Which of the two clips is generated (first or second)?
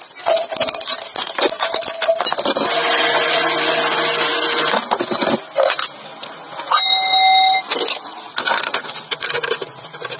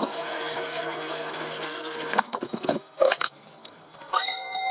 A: second